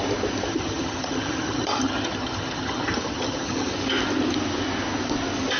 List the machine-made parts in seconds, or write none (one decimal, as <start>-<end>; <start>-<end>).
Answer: 0.5-3.7